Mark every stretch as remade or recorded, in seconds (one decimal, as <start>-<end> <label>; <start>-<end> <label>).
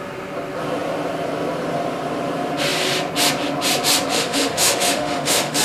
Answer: 0.0-4.1 recorded; 4.1-5.6 remade